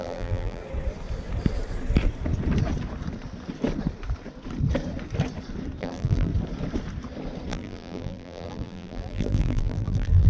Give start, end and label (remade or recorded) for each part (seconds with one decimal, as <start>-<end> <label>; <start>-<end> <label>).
0.0-0.6 remade; 0.6-5.8 recorded; 5.8-6.3 remade; 6.3-7.5 recorded; 7.5-10.3 remade